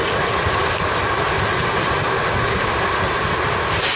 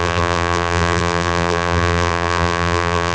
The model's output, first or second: second